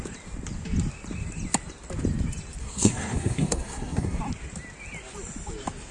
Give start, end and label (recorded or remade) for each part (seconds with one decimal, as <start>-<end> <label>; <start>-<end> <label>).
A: 0.0-2.6 recorded; 2.6-4.2 remade; 4.2-5.9 recorded